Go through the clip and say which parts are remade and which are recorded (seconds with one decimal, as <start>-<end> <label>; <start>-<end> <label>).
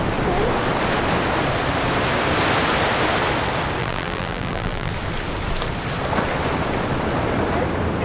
0.0-3.8 recorded; 3.8-4.9 remade; 4.9-8.0 recorded